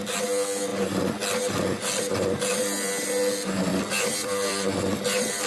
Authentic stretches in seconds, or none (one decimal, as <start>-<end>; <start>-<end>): 0.0-3.7